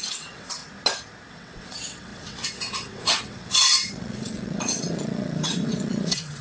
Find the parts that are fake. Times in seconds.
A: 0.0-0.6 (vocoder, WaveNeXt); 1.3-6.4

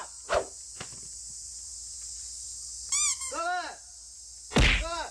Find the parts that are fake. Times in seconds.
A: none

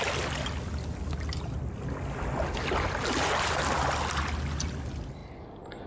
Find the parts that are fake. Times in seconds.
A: none